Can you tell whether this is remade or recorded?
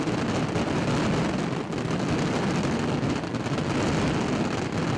recorded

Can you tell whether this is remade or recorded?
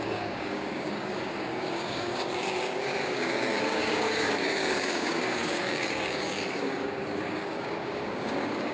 remade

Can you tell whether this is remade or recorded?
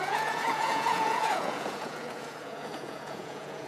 remade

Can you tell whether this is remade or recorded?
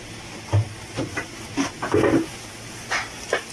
recorded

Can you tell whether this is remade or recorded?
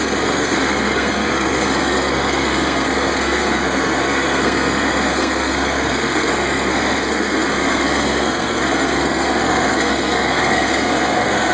remade